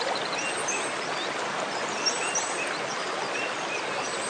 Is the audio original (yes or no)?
yes